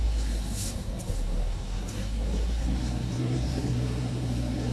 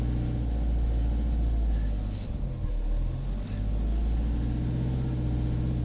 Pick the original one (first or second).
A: second